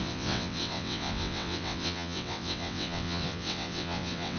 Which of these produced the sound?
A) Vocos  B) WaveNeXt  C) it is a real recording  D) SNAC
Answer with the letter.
B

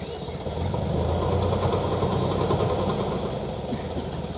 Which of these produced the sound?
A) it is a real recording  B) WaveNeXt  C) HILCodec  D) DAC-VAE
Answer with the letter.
A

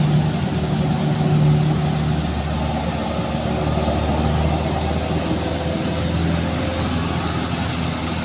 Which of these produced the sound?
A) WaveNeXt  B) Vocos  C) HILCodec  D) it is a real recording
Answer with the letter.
D